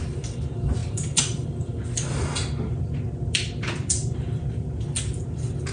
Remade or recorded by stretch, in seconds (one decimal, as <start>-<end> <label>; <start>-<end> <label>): 0.0-0.8 recorded; 0.8-1.7 remade; 1.7-2.7 recorded; 2.7-4.5 remade; 4.5-5.7 recorded